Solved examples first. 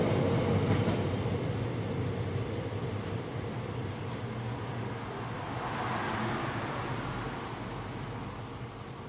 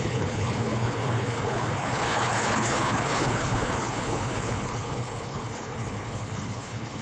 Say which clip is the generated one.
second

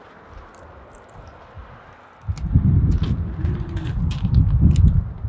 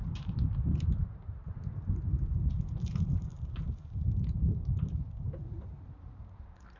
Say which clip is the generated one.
second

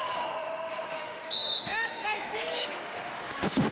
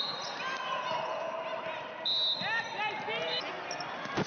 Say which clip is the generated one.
first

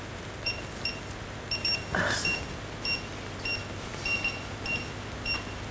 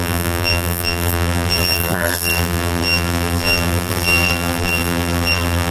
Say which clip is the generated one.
second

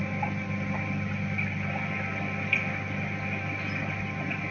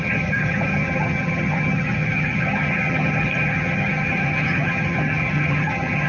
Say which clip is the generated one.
second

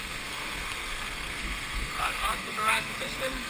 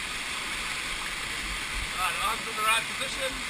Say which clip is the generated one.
first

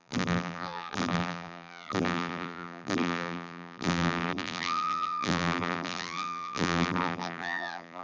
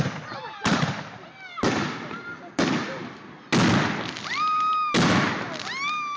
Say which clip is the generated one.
first